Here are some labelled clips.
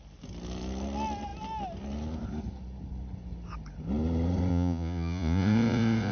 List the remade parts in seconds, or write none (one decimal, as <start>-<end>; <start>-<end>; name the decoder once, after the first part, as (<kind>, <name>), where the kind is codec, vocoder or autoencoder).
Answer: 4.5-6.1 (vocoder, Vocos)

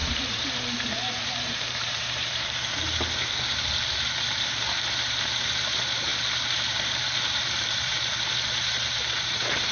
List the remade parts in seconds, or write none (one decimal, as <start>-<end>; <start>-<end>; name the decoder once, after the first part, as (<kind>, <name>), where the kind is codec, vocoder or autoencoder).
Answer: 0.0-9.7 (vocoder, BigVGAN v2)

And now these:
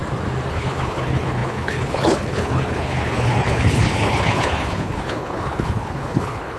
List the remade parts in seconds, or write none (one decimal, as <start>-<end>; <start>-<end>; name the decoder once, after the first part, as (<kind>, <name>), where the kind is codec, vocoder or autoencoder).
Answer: 0.5-6.6 (codec, HILCodec)